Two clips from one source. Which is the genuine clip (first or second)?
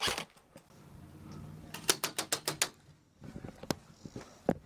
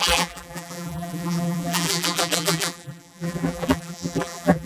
first